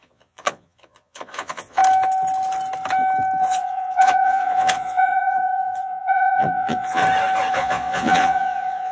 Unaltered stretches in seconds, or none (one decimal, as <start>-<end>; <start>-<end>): 1.8-3.4; 7.0-7.5